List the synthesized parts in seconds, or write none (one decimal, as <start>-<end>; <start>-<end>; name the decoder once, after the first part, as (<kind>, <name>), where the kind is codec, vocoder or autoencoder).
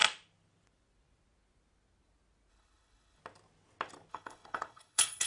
2.5-3.2 (codec, HILCodec); 4.1-5.3